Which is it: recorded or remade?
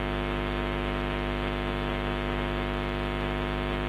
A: recorded